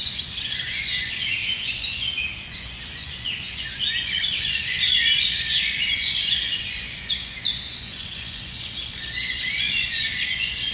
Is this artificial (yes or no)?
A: yes